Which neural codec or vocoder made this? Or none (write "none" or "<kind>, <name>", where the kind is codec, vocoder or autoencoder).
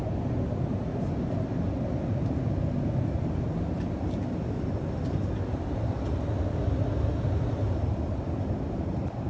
none